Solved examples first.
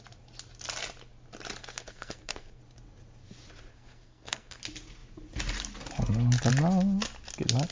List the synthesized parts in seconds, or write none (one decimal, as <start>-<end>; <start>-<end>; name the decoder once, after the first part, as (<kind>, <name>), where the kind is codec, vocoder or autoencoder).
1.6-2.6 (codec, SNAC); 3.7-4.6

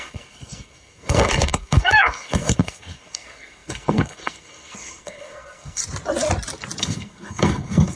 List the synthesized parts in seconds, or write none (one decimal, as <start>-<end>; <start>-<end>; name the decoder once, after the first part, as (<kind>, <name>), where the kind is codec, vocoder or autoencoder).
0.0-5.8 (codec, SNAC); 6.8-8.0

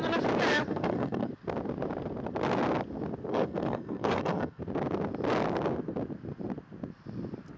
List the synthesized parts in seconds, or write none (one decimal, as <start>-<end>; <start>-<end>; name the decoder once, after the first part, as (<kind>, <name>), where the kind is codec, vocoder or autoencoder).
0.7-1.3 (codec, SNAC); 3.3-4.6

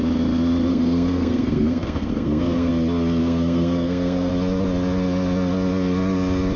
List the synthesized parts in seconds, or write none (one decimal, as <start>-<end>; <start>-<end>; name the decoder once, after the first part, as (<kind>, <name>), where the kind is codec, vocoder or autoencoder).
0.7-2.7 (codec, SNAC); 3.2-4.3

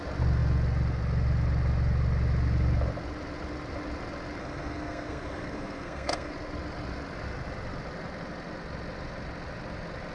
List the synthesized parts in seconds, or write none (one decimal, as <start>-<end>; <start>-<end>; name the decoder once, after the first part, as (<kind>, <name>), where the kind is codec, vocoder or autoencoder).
4.4-6.3 (codec, SNAC)

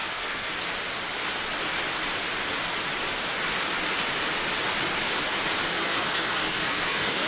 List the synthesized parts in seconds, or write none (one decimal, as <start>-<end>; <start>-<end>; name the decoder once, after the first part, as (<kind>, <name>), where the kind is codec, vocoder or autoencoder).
0.0-0.5 (codec, SNAC); 5.7-7.3